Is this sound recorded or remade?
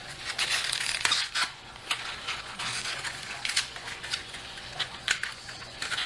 remade